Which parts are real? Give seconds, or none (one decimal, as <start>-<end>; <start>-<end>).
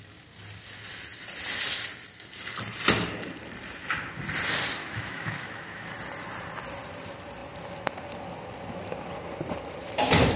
0.0-4.8; 5.9-10.4